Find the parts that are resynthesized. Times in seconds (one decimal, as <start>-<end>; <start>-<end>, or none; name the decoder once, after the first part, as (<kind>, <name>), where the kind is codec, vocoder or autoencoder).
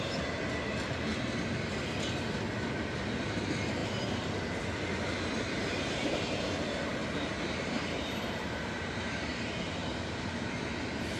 5.7-6.3 (vocoder, BigVGAN v2); 7.0-10.5